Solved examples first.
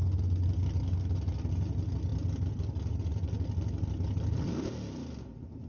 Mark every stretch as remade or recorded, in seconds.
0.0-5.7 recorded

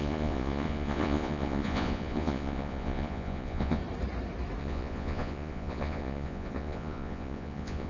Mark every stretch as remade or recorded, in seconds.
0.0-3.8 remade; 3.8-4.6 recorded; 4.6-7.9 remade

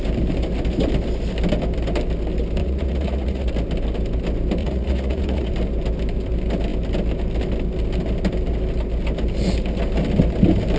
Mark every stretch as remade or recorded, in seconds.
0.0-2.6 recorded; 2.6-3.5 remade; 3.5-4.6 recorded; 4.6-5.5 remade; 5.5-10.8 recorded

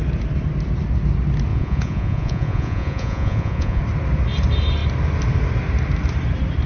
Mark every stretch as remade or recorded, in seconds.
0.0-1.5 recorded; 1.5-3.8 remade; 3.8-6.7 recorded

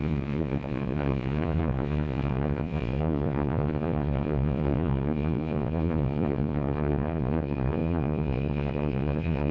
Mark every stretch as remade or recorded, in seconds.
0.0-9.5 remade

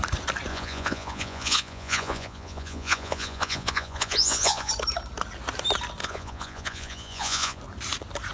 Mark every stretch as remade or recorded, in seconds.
0.0-0.5 recorded; 0.5-4.7 remade; 4.7-6.0 recorded; 6.0-7.6 remade; 7.6-8.3 recorded

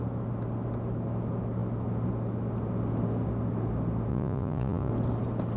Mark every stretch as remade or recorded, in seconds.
0.0-4.1 recorded; 4.1-4.9 remade; 4.9-5.6 recorded

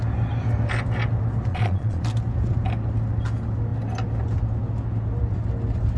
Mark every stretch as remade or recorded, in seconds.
0.0-1.5 recorded; 1.5-2.0 remade; 2.0-6.0 recorded